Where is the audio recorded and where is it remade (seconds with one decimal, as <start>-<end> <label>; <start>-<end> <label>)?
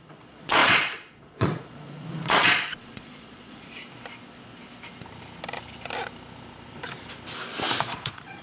0.0-3.8 remade; 3.8-7.8 recorded; 7.8-8.4 remade